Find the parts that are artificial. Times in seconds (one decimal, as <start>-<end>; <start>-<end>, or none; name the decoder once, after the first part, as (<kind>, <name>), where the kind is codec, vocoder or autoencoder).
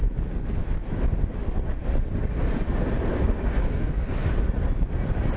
0.6-1.2 (autoencoder, DAC-VAE)